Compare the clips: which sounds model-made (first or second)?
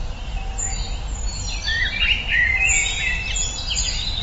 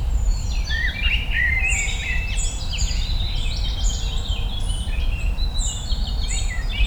second